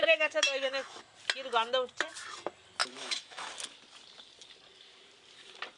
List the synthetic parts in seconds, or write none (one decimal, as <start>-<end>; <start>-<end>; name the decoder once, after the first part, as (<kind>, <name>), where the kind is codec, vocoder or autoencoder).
0.0-1.0 (autoencoder, DAC-VAE); 2.8-3.5